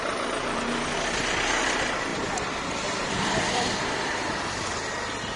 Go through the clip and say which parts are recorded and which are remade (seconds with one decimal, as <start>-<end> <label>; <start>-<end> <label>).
0.0-2.1 recorded; 2.1-4.9 remade; 4.9-5.4 recorded